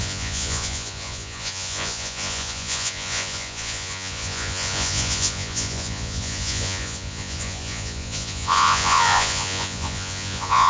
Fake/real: fake